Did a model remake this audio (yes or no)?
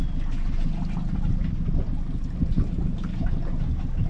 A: no